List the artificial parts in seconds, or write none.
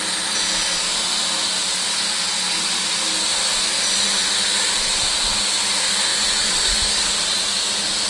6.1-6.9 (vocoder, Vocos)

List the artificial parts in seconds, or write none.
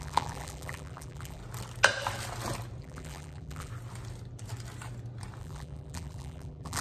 0.0-1.4 (vocoder, BigVGAN v2); 2.8-3.7; 5.4-6.8